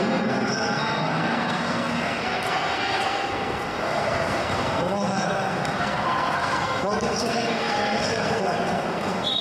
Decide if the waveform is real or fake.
fake